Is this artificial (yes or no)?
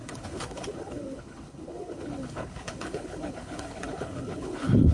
yes